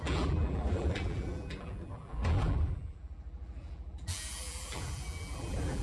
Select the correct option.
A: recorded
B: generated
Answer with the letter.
B